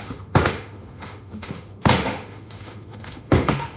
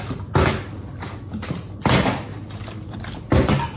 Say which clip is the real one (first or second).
second